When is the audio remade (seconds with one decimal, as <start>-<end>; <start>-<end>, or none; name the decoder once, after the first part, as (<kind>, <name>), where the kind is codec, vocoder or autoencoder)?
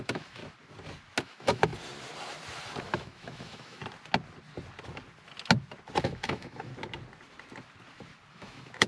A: 0.0-0.4 (autoencoder, DAC-VAE); 1.2-1.7; 2.8-3.8; 6.0-6.7; 8.3-8.9